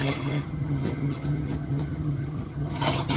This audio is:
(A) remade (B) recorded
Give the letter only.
A